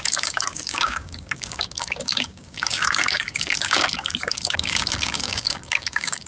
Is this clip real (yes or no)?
no